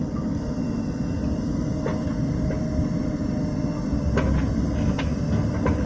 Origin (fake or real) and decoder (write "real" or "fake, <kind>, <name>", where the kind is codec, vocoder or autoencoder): real